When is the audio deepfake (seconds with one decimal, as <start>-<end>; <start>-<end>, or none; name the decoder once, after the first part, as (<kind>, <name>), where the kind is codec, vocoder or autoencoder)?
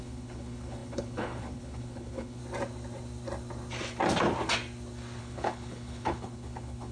0.0-2.4 (codec, HILCodec); 5.2-6.9